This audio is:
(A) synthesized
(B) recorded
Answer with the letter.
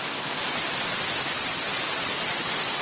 B